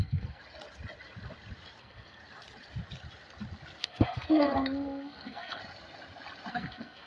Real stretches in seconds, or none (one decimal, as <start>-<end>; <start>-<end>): 0.4-1.8; 2.2-3.8; 5.6-6.5